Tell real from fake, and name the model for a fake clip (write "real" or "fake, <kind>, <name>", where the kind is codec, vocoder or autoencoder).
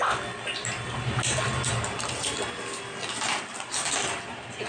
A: real